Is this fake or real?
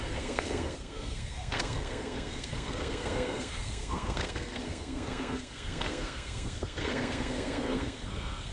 fake